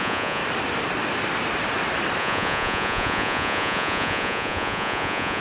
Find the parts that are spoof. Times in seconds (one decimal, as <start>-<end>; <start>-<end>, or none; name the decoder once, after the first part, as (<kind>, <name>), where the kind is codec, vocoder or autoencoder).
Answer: 0.0-0.4 (vocoder, Vocos); 2.2-5.4